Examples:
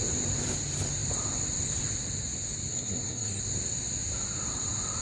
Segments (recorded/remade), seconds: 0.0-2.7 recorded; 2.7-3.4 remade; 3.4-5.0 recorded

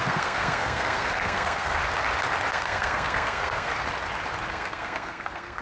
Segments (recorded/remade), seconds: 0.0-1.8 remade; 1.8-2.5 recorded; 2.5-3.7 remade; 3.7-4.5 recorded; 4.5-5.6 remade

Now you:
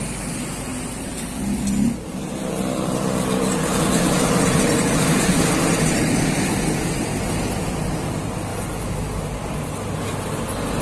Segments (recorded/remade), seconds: 0.0-10.8 recorded

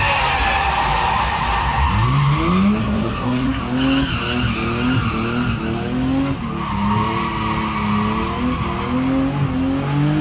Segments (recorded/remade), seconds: 0.0-2.8 recorded; 2.8-3.6 remade; 3.6-10.2 recorded

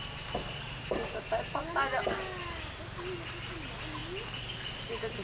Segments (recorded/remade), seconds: 0.0-5.2 recorded